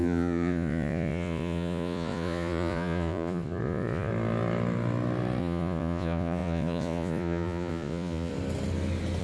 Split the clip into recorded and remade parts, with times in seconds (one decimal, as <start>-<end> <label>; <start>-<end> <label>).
0.0-4.1 remade; 4.1-5.4 recorded; 5.4-8.3 remade; 8.3-9.2 recorded